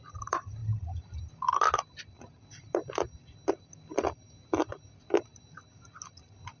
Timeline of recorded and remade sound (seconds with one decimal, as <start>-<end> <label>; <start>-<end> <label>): 0.0-0.6 remade; 0.6-4.6 recorded; 4.6-6.6 remade